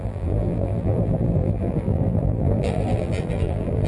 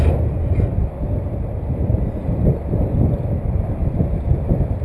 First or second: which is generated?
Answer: first